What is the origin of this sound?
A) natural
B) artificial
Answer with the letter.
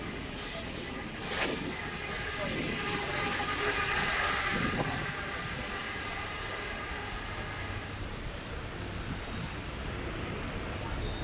A